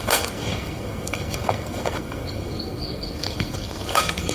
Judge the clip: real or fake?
fake